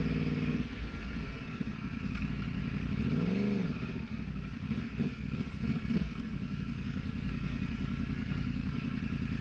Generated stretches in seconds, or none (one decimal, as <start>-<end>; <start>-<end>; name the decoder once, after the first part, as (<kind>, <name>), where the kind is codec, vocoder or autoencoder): 0.5-2.6 (codec, SNAC); 4.1-9.0